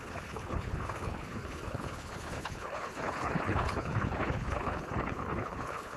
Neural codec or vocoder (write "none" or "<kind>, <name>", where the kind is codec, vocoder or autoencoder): codec, HILCodec